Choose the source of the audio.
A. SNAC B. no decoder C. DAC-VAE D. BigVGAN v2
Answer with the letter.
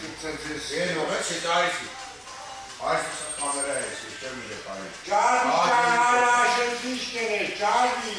B